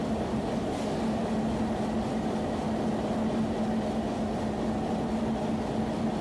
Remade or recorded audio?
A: recorded